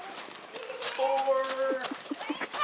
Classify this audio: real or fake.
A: real